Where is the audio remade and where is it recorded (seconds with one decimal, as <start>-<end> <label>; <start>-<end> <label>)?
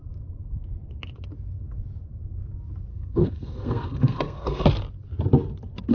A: 0.0-2.9 recorded; 2.9-4.7 remade; 4.7-5.9 recorded